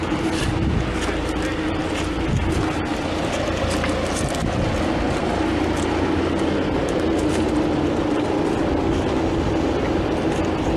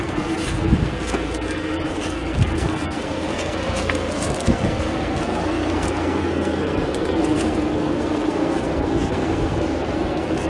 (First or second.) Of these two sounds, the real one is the first